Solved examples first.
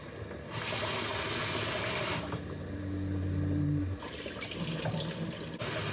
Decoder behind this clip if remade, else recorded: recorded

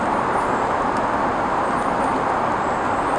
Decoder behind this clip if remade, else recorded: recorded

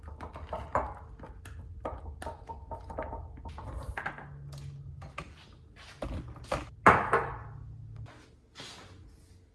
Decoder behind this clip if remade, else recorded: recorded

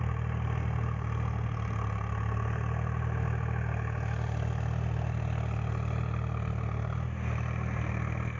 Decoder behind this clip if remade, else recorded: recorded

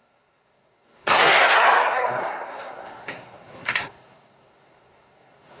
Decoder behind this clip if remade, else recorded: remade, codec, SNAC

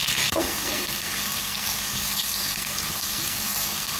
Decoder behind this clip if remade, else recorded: remade, codec, SNAC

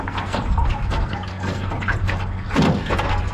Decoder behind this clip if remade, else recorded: remade, codec, SNAC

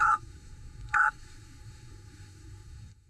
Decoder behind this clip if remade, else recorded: remade, codec, SNAC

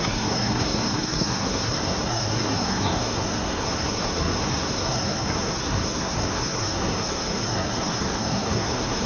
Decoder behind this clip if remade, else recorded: remade, codec, SNAC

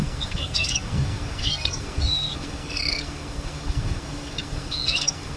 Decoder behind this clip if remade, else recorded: remade, codec, SNAC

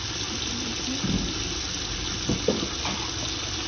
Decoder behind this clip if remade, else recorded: recorded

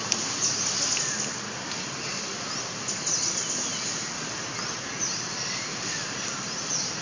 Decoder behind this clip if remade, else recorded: recorded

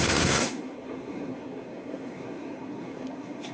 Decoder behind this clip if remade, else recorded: remade, codec, SNAC